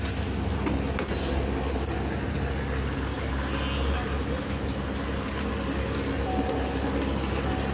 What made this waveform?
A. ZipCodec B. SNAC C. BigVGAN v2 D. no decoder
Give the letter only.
D